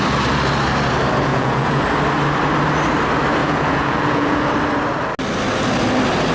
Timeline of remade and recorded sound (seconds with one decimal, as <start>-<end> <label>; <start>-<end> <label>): 0.0-1.3 recorded; 1.3-1.8 remade; 1.8-3.4 recorded; 3.4-4.4 remade; 4.4-6.3 recorded